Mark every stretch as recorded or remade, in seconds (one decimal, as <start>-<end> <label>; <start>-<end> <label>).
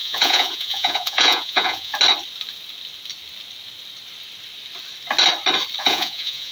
0.0-1.9 remade; 1.9-5.8 recorded; 5.8-6.5 remade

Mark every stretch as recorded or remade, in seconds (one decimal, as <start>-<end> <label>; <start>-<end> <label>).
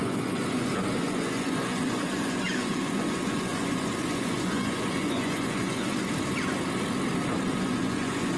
0.0-6.0 remade; 6.0-7.5 recorded; 7.5-8.4 remade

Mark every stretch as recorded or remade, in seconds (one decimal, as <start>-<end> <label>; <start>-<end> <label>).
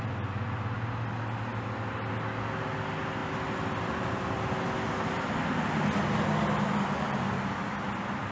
0.0-8.3 recorded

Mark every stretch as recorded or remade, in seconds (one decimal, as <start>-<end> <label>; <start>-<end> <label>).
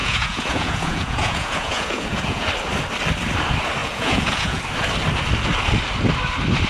0.0-2.5 remade; 2.5-3.8 recorded; 3.8-4.6 remade; 4.6-6.7 recorded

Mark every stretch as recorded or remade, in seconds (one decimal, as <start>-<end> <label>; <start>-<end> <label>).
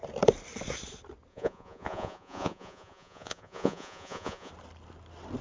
0.0-1.3 recorded; 1.3-4.5 remade; 4.5-5.4 recorded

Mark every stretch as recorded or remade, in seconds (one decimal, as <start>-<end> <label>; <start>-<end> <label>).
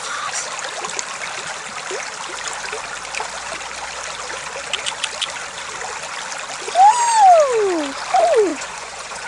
0.0-8.5 recorded; 8.5-9.3 remade